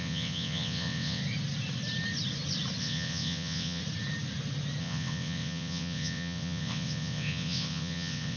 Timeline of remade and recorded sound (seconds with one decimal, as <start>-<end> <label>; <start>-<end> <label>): 0.0-1.2 remade; 1.2-2.8 recorded; 2.8-3.8 remade; 3.8-4.8 recorded; 4.8-8.4 remade

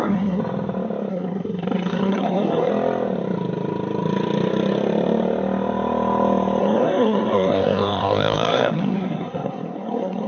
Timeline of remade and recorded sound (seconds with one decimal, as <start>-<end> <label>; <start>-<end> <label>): 0.0-0.4 remade; 0.4-1.1 recorded; 1.1-2.7 remade; 2.7-6.6 recorded; 6.6-10.3 remade